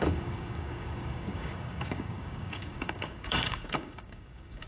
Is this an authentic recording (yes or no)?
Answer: no